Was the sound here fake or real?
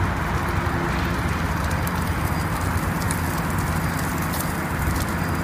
real